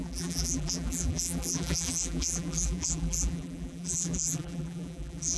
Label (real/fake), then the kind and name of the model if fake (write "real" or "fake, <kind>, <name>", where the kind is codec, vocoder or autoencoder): fake, vocoder, BigVGAN v2